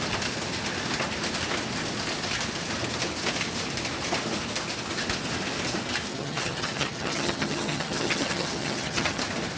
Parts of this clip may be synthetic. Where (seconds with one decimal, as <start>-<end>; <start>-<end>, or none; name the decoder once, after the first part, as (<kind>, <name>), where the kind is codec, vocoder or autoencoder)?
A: 6.1-9.2 (vocoder, HiFi-GAN)